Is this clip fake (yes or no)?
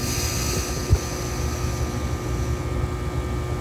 no